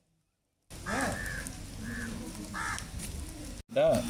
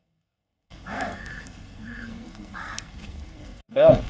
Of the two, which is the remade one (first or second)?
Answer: second